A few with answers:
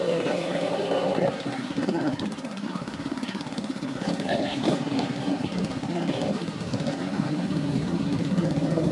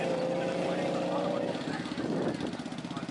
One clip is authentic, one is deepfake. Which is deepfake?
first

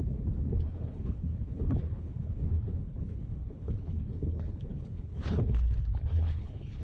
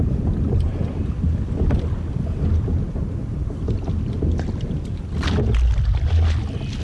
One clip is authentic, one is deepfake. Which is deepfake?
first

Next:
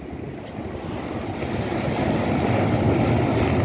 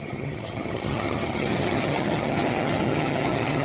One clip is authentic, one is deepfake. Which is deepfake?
second